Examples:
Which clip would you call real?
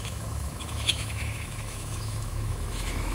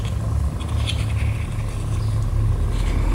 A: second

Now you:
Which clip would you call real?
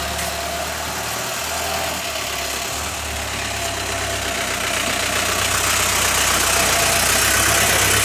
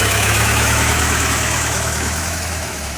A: first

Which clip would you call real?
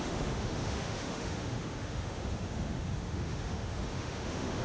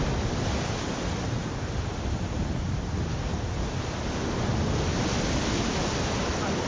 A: second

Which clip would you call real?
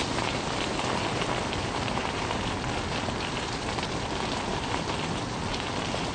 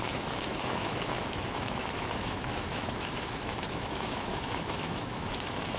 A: first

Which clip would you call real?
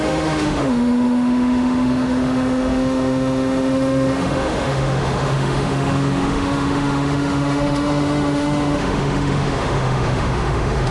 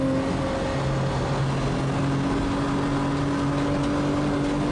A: second